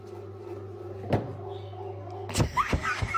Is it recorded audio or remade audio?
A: recorded